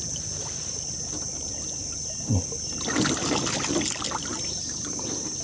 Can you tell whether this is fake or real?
real